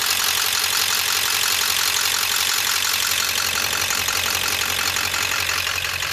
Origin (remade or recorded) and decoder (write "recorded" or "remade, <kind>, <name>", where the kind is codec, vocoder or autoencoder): remade, vocoder, BigVGAN v2